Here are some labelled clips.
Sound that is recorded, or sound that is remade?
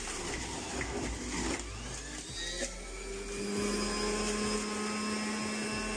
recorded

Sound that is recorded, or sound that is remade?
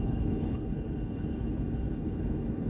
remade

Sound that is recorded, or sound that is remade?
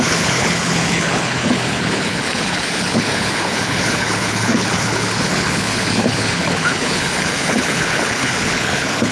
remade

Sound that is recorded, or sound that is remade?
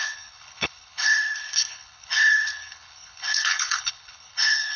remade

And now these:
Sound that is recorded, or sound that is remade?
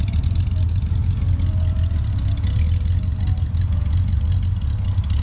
recorded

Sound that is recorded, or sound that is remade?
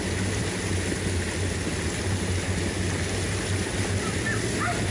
recorded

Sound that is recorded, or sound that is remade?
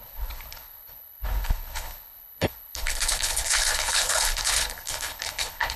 remade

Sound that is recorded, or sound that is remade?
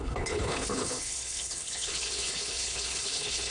remade